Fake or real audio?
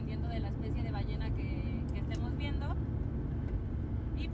real